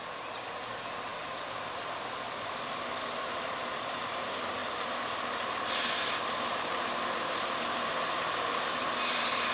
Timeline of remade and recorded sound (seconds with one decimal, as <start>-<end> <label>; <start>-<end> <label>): 0.0-1.1 remade; 1.1-3.7 recorded; 3.7-9.5 remade